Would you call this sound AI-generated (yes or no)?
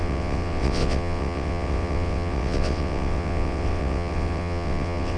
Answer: yes